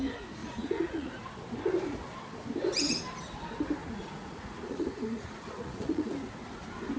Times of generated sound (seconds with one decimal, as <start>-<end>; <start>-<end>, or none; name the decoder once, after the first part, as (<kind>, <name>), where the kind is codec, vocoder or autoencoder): 0.4-1.3 (vocoder, Vocos); 3.8-6.1